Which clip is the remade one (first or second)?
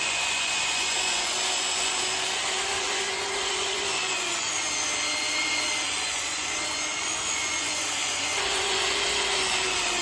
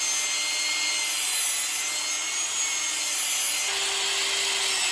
first